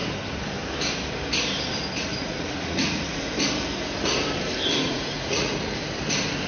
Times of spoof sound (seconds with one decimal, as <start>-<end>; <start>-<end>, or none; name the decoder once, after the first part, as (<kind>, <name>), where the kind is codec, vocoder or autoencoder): 2.1-3.3 (vocoder, Vocos); 4.8-5.7